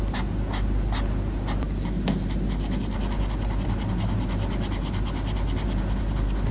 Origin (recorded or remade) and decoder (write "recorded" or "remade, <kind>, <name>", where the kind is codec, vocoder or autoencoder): recorded